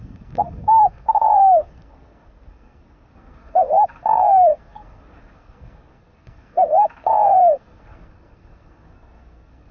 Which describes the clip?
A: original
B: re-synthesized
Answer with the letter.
B